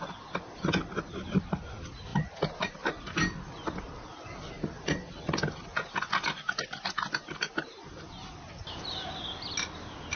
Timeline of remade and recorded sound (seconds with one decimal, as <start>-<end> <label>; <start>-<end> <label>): 0.0-10.2 recorded